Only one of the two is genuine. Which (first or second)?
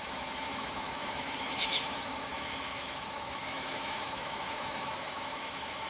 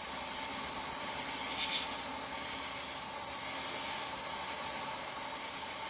second